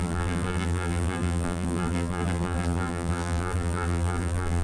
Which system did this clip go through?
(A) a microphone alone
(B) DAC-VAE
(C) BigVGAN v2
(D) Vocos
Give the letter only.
C